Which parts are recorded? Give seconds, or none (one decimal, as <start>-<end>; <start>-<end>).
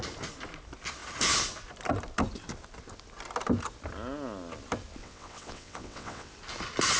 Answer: 0.0-5.0; 6.3-7.0